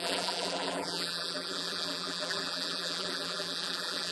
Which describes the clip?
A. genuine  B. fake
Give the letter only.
B